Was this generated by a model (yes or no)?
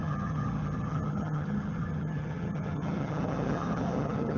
yes